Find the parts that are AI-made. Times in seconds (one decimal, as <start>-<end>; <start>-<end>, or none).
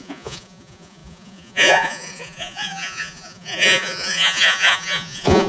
0.0-5.5